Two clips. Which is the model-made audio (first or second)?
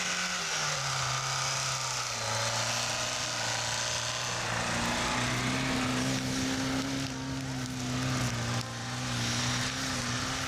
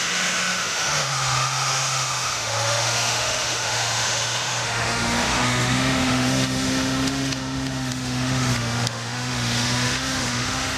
second